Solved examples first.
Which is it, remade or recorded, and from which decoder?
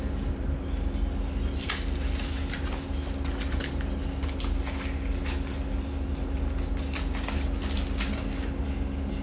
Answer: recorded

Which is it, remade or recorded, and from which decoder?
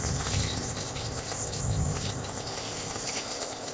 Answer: remade, codec, ZipCodec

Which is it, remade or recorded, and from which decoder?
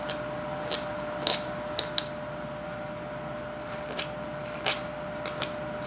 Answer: recorded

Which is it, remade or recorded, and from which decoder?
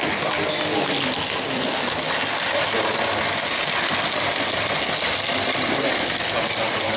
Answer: recorded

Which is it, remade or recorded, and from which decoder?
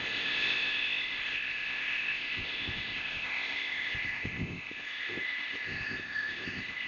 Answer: remade, codec, ZipCodec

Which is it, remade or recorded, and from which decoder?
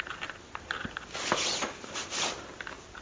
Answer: recorded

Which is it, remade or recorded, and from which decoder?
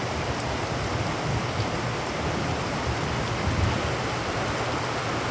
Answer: recorded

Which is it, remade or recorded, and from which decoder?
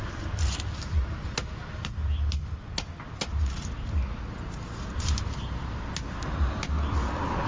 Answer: recorded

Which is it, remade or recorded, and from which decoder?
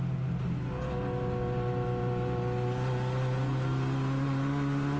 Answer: recorded